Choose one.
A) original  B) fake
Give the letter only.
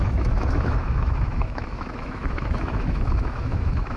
B